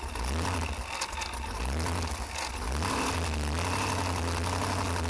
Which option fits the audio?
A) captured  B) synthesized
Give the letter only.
A